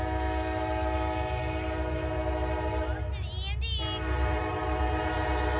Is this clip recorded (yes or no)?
yes